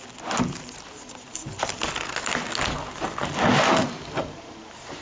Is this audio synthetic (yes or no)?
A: no